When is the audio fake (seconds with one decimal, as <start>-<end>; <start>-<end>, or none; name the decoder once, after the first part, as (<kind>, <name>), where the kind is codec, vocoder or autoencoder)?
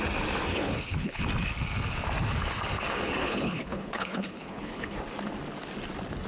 0.5-1.2 (codec, HILCodec); 3.2-5.0